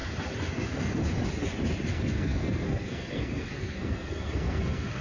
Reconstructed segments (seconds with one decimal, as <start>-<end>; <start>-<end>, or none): 0.5-1.0; 1.9-5.0